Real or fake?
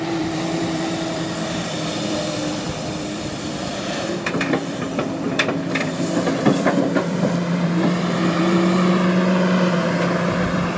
fake